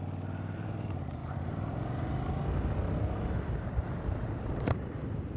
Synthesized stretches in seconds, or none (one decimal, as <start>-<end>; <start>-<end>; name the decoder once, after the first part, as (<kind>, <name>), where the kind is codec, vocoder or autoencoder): 0.0-1.2 (vocoder, BigVGAN v2); 4.4-5.4